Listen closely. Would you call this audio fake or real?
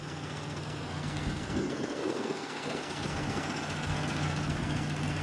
fake